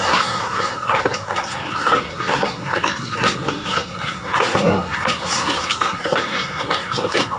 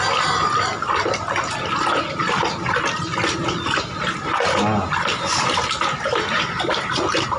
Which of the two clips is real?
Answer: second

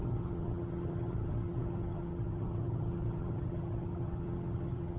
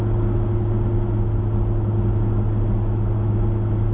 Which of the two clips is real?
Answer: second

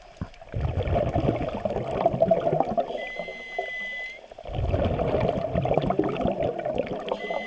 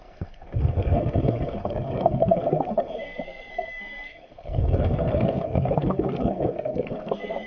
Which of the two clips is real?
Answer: first